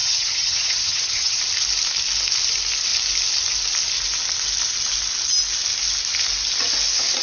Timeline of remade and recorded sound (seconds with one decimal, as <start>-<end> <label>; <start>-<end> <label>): 0.0-1.4 remade; 1.4-7.2 recorded